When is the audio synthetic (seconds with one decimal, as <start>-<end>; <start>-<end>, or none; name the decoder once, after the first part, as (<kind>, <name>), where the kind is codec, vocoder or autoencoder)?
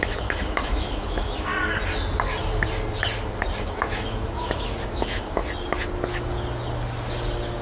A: 0.0-1.5 (autoencoder, DAC-VAE); 3.6-5.4